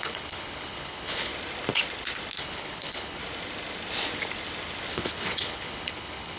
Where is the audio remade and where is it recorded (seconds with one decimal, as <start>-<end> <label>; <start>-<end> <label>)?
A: 0.0-1.3 remade; 1.3-2.4 recorded; 2.4-3.2 remade; 3.2-4.9 recorded; 4.9-6.4 remade